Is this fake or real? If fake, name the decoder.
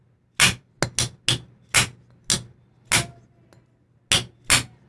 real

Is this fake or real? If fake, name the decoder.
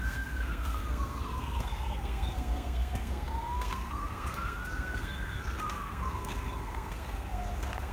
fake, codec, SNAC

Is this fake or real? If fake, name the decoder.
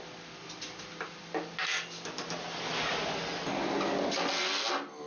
real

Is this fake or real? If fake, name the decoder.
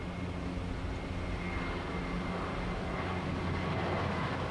real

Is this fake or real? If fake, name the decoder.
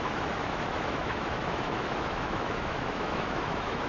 fake, autoencoder, DAC-VAE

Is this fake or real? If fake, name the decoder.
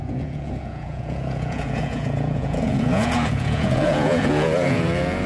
fake, vocoder, Vocos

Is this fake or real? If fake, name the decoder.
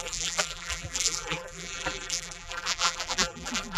fake, vocoder, BigVGAN v2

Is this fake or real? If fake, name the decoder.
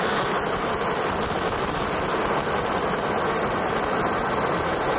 fake, vocoder, BigVGAN v2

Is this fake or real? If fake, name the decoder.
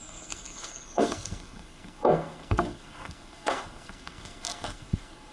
fake, codec, SNAC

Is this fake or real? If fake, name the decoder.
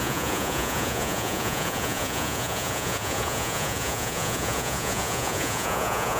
fake, vocoder, Vocos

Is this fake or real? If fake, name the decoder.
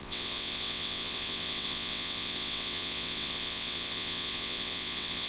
fake, vocoder, WaveNeXt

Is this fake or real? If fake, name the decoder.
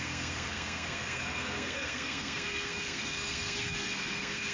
fake, codec, SNAC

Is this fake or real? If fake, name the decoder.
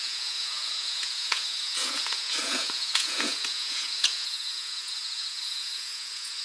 fake, vocoder, Vocos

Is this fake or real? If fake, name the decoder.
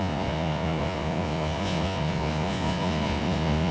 fake, vocoder, Vocos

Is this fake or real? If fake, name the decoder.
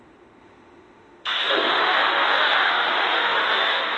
fake, autoencoder, DAC-VAE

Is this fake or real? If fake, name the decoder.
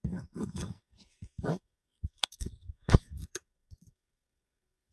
fake, codec, SNAC